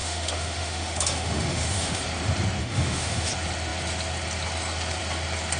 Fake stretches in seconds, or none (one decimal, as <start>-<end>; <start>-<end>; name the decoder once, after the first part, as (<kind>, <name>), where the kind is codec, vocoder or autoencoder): 0.0-2.0 (autoencoder, DAC-VAE); 2.6-3.3